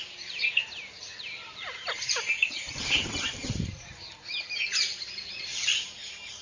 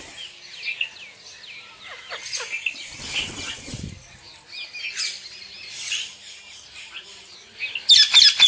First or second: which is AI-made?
first